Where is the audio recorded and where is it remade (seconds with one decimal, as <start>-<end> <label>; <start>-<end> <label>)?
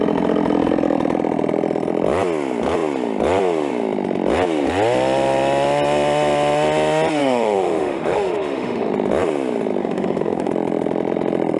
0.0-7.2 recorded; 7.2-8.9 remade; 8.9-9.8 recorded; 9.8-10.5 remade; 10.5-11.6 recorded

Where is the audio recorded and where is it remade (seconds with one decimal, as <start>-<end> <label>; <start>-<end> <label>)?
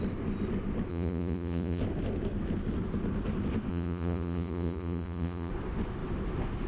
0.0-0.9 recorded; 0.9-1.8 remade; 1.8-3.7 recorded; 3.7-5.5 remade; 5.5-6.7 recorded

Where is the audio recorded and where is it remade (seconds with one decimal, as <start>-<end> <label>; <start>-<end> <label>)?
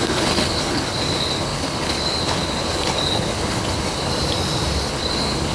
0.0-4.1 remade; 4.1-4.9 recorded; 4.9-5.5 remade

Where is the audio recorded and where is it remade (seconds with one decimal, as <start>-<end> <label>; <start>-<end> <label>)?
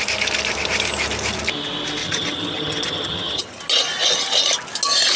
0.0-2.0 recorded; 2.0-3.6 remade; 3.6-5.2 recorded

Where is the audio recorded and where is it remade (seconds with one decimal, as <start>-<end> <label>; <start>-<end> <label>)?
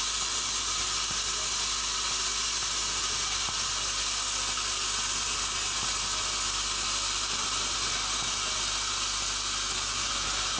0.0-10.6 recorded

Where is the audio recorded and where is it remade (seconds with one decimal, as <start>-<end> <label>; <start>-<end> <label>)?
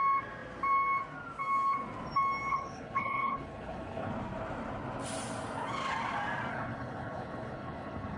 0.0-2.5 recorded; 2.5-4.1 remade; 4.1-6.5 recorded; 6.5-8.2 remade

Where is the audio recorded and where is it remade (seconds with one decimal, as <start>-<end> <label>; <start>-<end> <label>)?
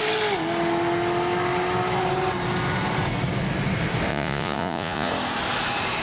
0.0-4.1 recorded; 4.1-5.1 remade; 5.1-6.0 recorded